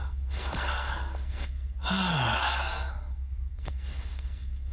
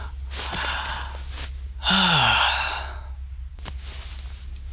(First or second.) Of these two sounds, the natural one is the second